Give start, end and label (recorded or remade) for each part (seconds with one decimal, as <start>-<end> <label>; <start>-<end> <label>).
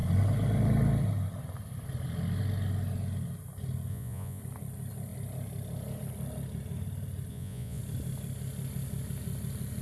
0.0-3.9 recorded; 3.9-4.4 remade; 4.4-7.3 recorded; 7.3-7.8 remade; 7.8-9.8 recorded